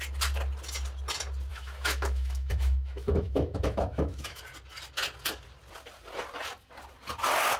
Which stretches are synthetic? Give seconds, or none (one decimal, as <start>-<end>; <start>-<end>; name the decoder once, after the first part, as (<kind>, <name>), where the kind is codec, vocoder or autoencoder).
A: 1.5-4.4 (autoencoder, DAC-VAE)